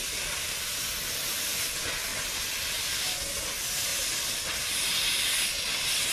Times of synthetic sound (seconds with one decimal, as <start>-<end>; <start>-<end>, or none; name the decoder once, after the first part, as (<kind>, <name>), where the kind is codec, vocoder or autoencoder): none